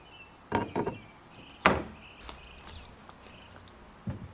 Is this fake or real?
real